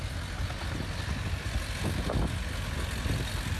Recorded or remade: recorded